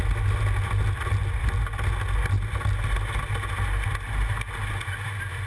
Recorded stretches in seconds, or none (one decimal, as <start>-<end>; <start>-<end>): 0.0-5.5